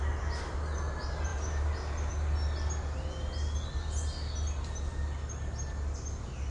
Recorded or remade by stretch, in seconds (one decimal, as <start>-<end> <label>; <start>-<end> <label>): 0.0-6.5 recorded